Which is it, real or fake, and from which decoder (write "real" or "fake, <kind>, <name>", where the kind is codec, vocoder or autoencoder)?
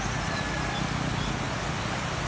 real